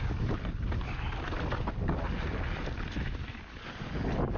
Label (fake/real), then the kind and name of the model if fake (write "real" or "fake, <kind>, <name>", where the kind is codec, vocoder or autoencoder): real